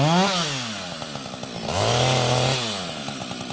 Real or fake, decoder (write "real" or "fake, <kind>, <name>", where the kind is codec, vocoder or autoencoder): real